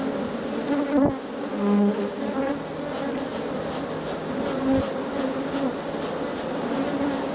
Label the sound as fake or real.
real